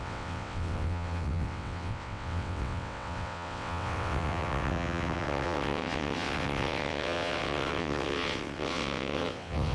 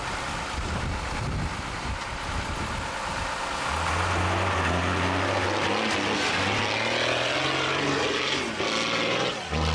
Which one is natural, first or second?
second